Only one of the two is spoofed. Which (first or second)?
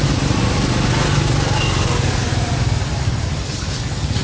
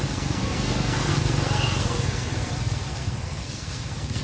second